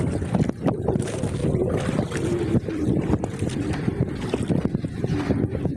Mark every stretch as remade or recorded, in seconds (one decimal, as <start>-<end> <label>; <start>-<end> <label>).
0.0-5.8 recorded